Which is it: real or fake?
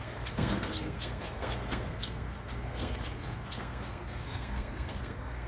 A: fake